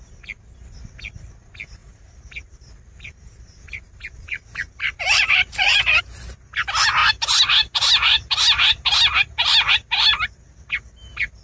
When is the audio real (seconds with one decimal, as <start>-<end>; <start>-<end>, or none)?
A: 0.0-1.8; 6.0-11.4